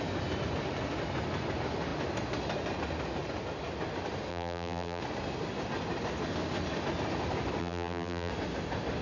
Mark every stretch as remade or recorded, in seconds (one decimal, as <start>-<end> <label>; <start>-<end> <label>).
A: 0.0-4.3 recorded; 4.3-5.0 remade; 5.0-7.6 recorded; 7.6-8.3 remade; 8.3-9.0 recorded